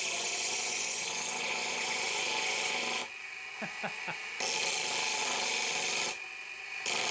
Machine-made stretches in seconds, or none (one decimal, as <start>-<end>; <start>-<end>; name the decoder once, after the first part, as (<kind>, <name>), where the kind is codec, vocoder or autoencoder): 0.0-3.0 (vocoder, Vocos)